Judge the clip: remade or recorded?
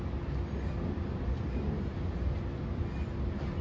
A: recorded